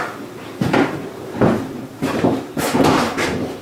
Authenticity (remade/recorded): remade